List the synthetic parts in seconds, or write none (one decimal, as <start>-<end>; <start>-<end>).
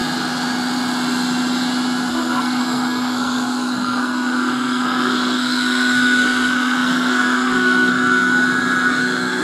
2.1-8.3; 8.9-9.4